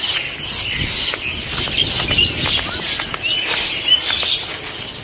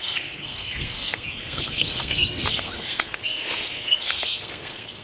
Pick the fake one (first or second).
second